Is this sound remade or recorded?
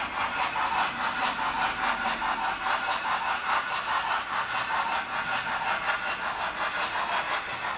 recorded